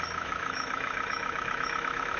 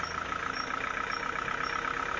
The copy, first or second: first